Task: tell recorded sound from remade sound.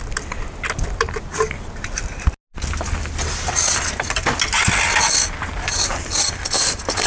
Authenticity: recorded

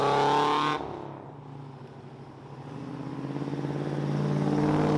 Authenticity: recorded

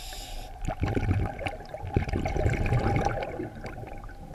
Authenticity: remade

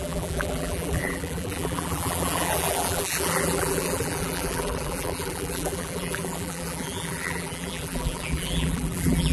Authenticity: remade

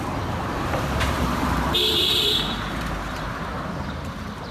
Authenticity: remade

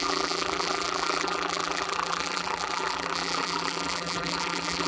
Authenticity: remade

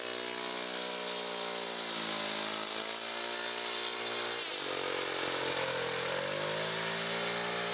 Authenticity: recorded